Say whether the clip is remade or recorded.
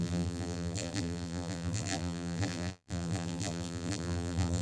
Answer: remade